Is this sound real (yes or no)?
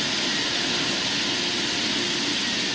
yes